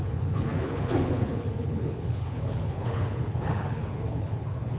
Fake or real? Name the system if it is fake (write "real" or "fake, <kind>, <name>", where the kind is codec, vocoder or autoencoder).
fake, codec, HILCodec